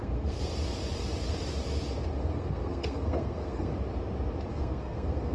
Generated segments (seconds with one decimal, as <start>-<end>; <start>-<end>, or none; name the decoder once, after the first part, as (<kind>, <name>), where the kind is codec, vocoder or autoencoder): 0.0-0.5 (codec, SNAC); 2.2-3.7; 4.5-5.3